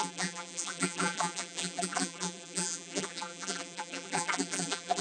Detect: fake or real fake